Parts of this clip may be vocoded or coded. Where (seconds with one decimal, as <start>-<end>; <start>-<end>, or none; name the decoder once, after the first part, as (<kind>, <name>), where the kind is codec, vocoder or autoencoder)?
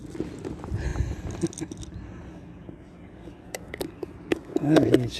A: 2.3-5.2 (codec, DAC)